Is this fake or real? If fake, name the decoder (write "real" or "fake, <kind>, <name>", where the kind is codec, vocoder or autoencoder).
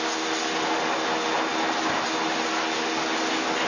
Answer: real